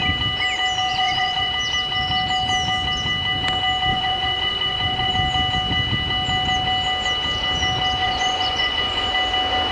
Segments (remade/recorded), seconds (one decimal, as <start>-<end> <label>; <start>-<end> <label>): 0.0-0.9 recorded; 0.9-1.5 remade; 1.5-3.9 recorded; 3.9-5.1 remade; 5.1-8.0 recorded; 8.0-9.1 remade; 9.1-9.7 recorded